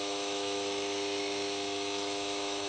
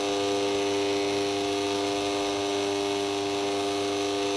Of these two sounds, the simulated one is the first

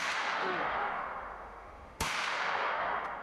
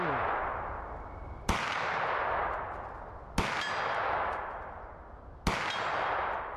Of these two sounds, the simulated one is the first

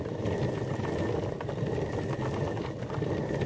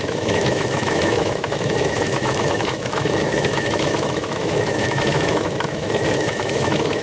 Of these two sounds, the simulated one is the second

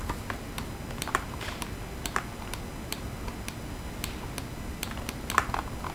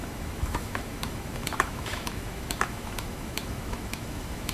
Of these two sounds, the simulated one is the second